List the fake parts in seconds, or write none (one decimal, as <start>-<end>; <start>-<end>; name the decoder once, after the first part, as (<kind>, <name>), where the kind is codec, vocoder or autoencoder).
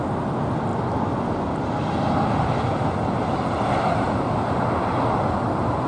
none